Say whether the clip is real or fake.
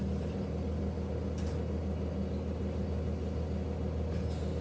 real